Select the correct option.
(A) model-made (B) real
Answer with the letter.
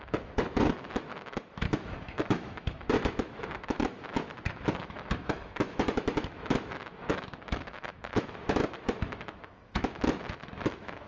A